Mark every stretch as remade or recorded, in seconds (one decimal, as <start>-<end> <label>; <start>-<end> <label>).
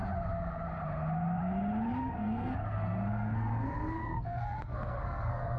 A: 0.0-2.0 recorded; 2.0-5.6 remade